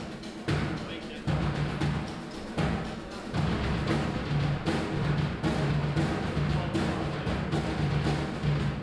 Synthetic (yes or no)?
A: no